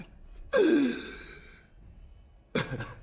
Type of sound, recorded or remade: remade